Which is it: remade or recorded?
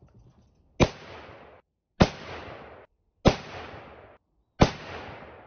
recorded